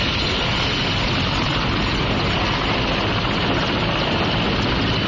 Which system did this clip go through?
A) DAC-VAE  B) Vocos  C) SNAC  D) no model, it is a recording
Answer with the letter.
D